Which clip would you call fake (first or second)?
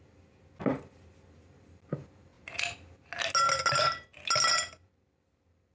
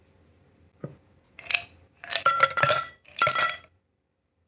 second